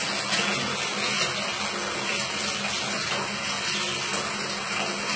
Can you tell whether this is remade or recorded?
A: recorded